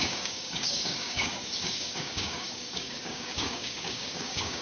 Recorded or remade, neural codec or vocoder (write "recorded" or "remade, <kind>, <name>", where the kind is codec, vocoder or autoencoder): remade, codec, DAC